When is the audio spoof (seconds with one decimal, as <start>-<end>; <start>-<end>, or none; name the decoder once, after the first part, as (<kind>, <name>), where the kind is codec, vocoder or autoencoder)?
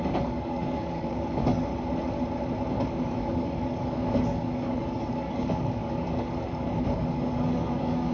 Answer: 0.0-1.7 (codec, DAC); 2.7-8.1